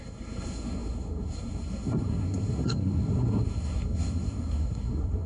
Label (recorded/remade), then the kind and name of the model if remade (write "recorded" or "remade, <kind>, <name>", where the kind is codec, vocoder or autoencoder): remade, codec, SNAC